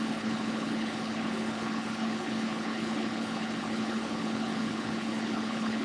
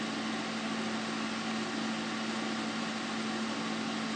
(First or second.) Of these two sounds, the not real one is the first